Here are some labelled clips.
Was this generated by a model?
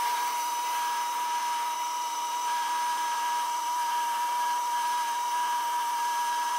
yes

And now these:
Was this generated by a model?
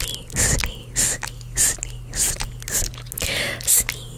no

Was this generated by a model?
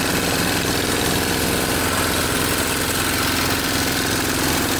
no